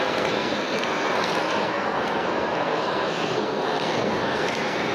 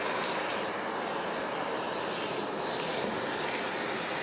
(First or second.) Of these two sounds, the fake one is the first